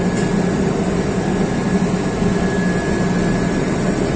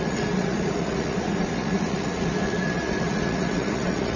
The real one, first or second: first